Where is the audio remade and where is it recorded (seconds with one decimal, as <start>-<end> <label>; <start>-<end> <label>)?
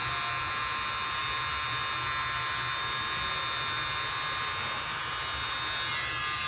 0.0-6.5 recorded